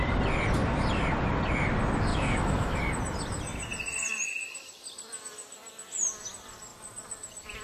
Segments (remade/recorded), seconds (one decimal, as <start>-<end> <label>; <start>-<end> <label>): 0.0-2.1 recorded; 2.1-2.8 remade; 2.8-7.6 recorded